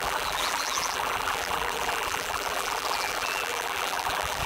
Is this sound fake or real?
fake